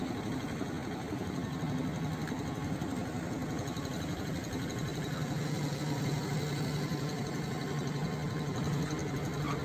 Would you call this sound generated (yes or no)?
no